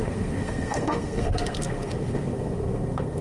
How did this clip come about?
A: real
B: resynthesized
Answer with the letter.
B